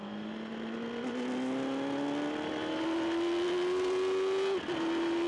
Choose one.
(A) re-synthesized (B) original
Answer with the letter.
B